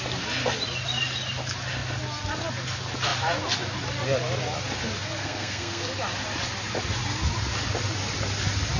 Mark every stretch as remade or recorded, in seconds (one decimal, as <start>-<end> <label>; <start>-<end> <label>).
0.0-5.2 recorded; 5.2-5.8 remade; 5.8-8.8 recorded